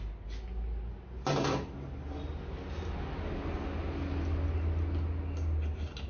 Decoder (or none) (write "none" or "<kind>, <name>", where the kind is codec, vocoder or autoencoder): none